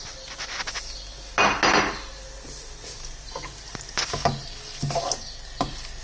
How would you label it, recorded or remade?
recorded